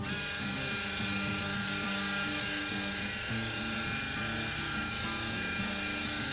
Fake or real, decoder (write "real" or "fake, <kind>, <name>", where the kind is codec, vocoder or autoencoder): real